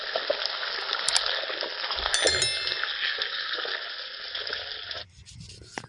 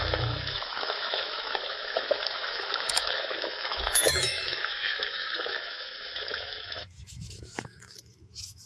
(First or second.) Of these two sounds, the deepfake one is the second